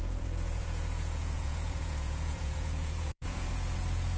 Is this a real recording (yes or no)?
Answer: no